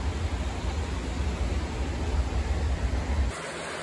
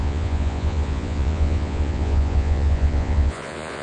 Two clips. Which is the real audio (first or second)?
first